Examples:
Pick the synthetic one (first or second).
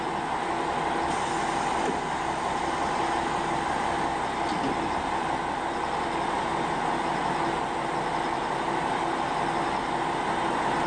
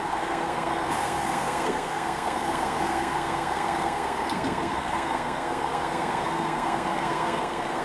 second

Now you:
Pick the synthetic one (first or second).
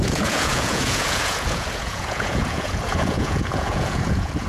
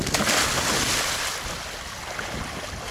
first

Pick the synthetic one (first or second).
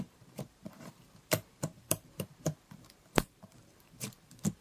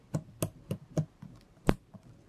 first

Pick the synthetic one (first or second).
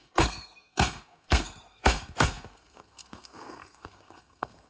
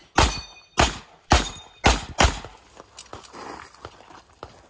first